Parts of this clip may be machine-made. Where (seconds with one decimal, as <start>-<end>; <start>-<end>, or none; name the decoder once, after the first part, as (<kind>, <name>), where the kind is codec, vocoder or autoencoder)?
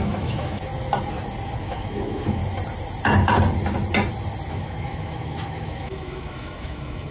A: 0.0-0.7 (autoencoder, DAC-VAE); 1.6-2.4; 4.5-7.1